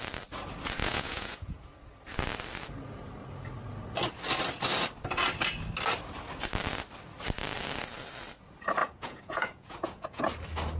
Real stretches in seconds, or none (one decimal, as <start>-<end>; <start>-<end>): 0.0-0.8; 1.7-8.8; 10.2-10.8